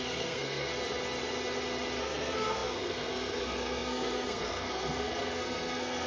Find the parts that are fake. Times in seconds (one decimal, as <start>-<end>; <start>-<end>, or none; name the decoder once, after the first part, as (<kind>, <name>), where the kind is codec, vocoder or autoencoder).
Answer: 0.0-0.7 (codec, SNAC); 2.0-6.1